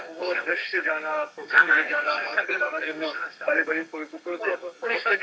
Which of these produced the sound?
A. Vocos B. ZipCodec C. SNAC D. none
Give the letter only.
C